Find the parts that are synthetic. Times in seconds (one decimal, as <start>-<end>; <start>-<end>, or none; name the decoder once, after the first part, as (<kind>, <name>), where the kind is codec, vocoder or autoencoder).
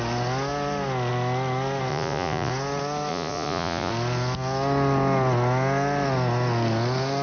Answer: 1.9-2.5 (vocoder, Vocos); 3.1-3.9